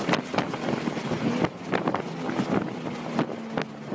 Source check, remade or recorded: recorded